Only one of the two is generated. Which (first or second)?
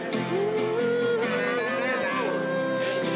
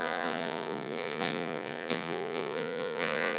second